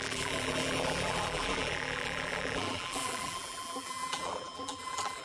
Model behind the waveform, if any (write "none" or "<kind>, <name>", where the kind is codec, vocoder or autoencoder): vocoder, BigVGAN v2